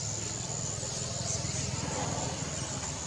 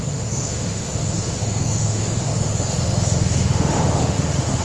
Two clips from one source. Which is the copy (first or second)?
second